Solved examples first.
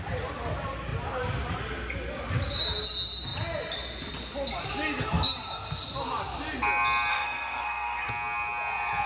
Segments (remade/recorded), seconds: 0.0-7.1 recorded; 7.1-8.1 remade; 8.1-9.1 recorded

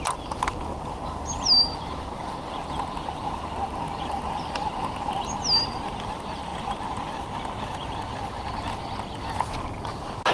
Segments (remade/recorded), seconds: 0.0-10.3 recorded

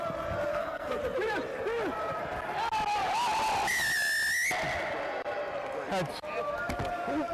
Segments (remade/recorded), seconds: 0.0-0.5 recorded; 0.5-1.0 remade; 1.0-7.3 recorded

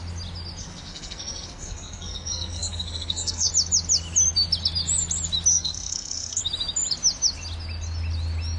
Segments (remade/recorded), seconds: 0.0-0.6 recorded; 0.6-3.5 remade; 3.5-5.5 recorded; 5.5-6.4 remade; 6.4-8.6 recorded

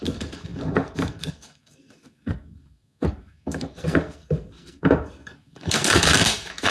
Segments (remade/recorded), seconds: 0.0-6.7 remade

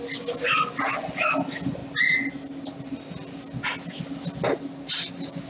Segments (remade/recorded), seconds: 0.0-5.5 recorded